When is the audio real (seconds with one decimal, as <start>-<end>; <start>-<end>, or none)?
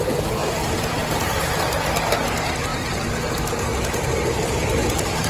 0.0-0.4; 1.4-2.7; 3.2-3.7; 4.8-5.3